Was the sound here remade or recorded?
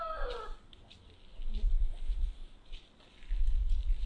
recorded